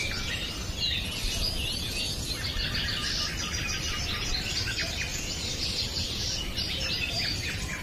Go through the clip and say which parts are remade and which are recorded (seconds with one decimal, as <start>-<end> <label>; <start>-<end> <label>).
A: 0.0-5.1 recorded; 5.1-7.1 remade; 7.1-7.8 recorded